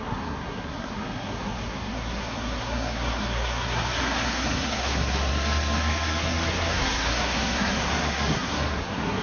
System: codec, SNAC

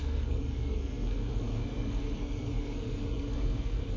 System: codec, SNAC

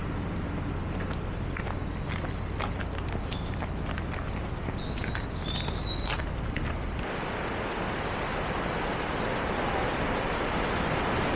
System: none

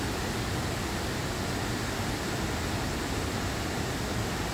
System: none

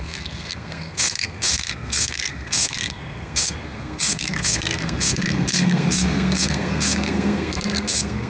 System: codec, SNAC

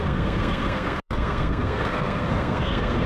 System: codec, SNAC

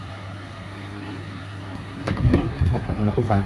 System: codec, SNAC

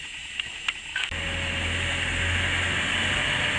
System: none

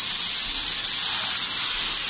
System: none